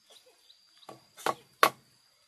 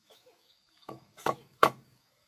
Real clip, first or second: first